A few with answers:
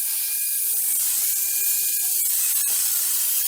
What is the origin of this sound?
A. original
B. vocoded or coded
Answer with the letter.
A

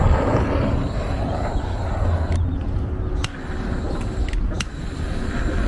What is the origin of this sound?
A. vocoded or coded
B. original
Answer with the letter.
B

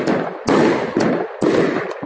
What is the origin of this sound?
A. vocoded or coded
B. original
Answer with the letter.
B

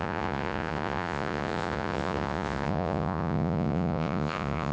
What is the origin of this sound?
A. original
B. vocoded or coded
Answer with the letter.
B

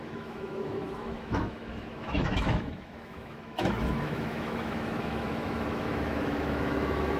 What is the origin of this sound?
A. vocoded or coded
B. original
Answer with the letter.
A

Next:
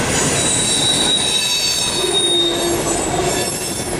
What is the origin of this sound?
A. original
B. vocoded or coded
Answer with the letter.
A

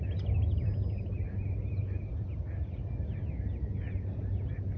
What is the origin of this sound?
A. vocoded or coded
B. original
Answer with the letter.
B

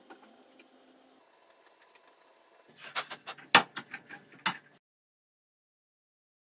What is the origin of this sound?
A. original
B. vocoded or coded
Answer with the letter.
A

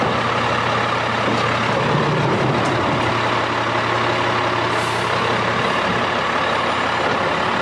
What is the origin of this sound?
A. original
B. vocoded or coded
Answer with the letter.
A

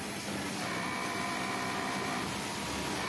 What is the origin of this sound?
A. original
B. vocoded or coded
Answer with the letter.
B